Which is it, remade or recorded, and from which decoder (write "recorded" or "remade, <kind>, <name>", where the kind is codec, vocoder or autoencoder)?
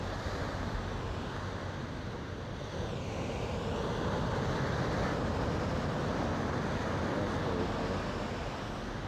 recorded